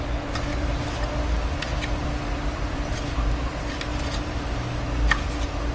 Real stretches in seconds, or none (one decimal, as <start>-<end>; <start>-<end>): 0.0-3.9; 4.8-5.7